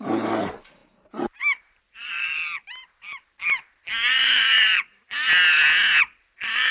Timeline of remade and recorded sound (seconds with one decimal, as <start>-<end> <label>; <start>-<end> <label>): 0.0-5.0 remade; 5.0-6.2 recorded; 6.2-6.7 remade